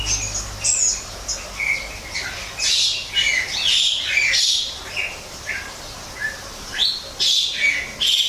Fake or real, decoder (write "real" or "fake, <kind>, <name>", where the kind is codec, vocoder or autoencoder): real